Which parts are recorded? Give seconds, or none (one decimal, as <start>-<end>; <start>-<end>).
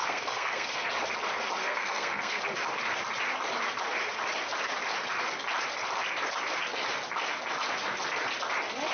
0.9-1.6; 2.4-8.9